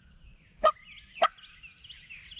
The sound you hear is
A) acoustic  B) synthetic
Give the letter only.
A